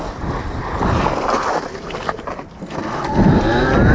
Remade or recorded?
recorded